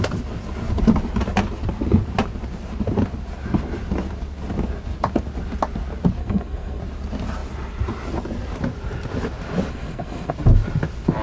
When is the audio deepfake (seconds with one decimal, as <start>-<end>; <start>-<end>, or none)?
6.2-6.8; 9.7-10.3